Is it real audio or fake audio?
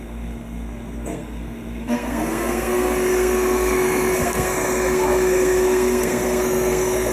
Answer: fake